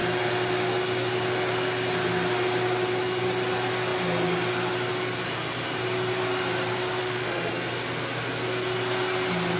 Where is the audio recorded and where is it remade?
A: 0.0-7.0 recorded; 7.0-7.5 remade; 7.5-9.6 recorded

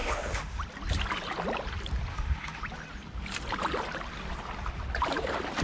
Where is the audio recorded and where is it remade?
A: 0.0-0.6 remade; 0.6-2.1 recorded; 2.1-2.6 remade; 2.6-5.6 recorded

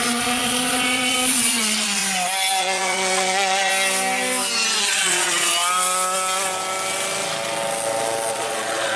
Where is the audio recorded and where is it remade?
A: 0.0-2.0 remade; 2.0-2.6 recorded; 2.6-3.7 remade; 3.7-4.8 recorded; 4.8-5.5 remade; 5.5-8.3 recorded; 8.3-9.0 remade

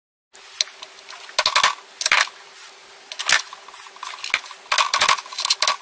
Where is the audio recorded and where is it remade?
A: 0.0-5.8 recorded

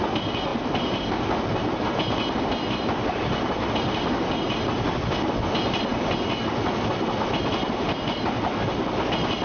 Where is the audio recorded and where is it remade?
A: 0.0-9.4 recorded